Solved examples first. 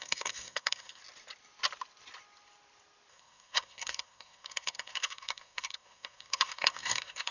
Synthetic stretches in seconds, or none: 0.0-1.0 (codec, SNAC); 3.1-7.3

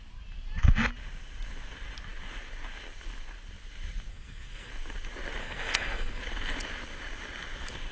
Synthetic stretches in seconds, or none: 4.1-4.7 (codec, SNAC); 5.4-6.2

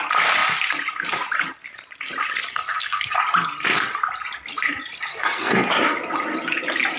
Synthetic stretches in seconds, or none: 2.5-3.2 (codec, SNAC); 5.1-5.7

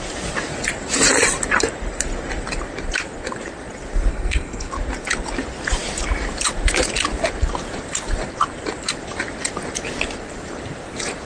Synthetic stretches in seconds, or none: 4.1-4.7 (codec, SNAC)